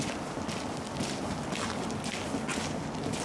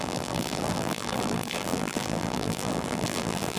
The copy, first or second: second